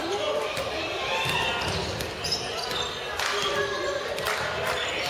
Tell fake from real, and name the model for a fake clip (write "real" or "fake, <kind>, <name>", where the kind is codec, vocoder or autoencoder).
real